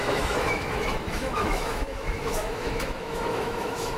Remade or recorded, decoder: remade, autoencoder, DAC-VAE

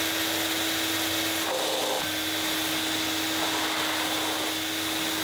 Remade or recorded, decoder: recorded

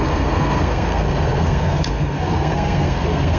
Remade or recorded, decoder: remade, codec, SNAC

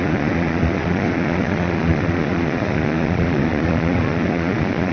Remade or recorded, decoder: remade, vocoder, Vocos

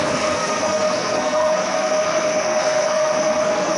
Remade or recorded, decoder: remade, codec, SNAC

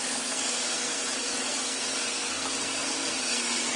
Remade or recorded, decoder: remade, codec, SNAC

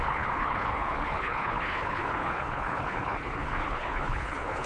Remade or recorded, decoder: remade, codec, HILCodec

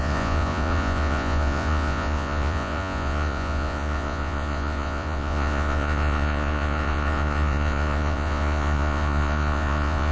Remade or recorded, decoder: remade, vocoder, Vocos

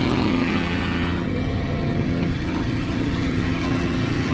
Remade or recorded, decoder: remade, vocoder, HiFi-GAN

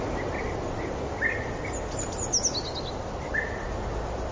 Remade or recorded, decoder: recorded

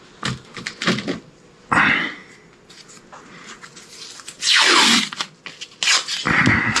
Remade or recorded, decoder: recorded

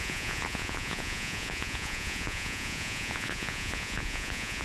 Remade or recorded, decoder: remade, vocoder, Vocos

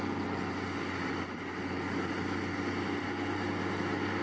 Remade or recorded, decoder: recorded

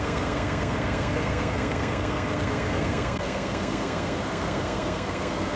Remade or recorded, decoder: remade, codec, SNAC